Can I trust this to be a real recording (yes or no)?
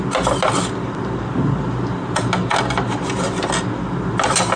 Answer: yes